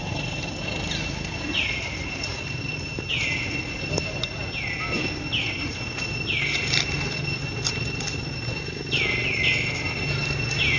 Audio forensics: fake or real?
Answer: real